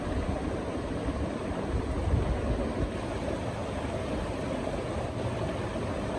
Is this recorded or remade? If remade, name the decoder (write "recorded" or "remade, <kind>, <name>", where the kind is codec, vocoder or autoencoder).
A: recorded